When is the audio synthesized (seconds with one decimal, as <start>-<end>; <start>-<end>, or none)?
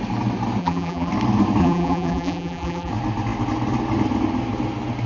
0.6-1.1; 1.6-2.9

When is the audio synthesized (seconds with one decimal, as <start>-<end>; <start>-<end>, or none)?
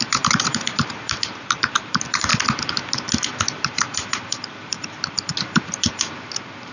0.0-2.3; 3.4-6.7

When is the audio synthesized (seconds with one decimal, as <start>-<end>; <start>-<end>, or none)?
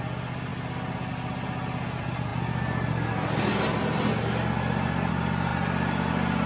none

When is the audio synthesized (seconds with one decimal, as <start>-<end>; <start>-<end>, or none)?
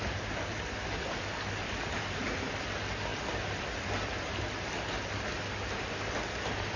1.6-2.2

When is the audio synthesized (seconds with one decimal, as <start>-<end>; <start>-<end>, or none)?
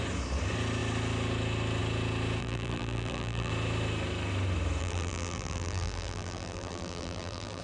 2.4-3.5; 4.8-7.6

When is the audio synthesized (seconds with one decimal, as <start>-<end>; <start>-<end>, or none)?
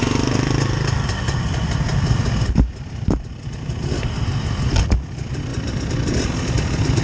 none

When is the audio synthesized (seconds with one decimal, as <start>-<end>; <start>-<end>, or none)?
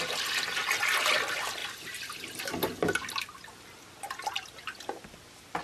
none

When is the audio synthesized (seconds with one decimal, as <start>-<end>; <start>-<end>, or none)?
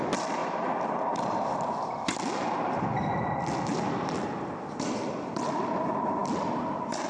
0.4-1.6